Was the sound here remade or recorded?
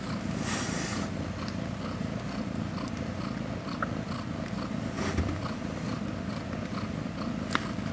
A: recorded